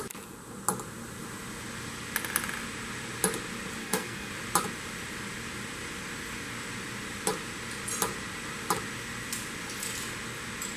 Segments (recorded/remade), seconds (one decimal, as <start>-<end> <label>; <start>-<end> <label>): 0.0-3.8 recorded; 3.8-4.3 remade; 4.3-10.8 recorded